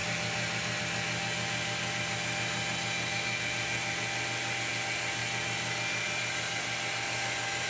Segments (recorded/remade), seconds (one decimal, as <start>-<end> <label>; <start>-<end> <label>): 0.0-0.8 remade; 0.8-7.7 recorded